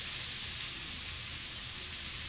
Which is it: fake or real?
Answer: real